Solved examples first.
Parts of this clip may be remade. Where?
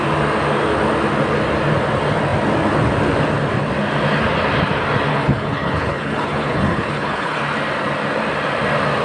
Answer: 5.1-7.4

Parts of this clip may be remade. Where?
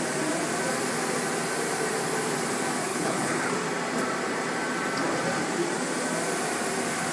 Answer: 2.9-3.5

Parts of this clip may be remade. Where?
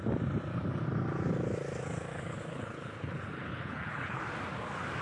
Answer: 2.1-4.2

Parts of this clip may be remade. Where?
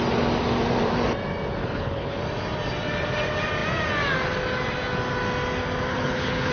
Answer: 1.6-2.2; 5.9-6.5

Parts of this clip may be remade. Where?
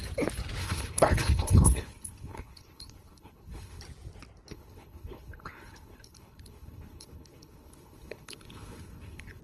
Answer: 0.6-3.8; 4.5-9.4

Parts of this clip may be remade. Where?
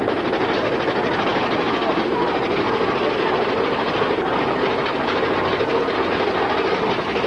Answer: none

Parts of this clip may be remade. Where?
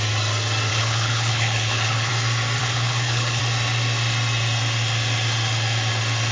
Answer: 0.7-2.1; 2.6-3.4